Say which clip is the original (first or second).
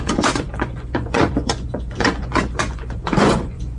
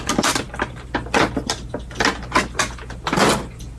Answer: second